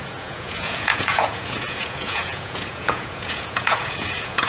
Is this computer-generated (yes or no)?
yes